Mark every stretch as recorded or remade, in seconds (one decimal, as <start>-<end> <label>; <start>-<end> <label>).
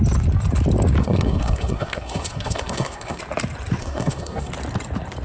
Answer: 0.0-1.0 recorded; 1.0-3.2 remade; 3.2-3.8 recorded; 3.8-4.5 remade; 4.5-5.2 recorded